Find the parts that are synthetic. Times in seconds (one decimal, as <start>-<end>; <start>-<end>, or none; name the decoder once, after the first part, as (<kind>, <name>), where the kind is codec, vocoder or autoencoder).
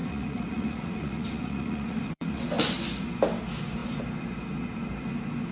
0.0-2.4 (vocoder, Vocos)